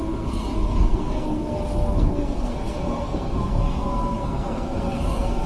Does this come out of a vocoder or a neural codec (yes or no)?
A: yes